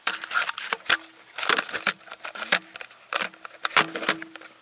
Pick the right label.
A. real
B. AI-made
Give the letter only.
B